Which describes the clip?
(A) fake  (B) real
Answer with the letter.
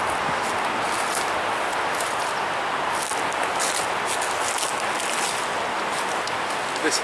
B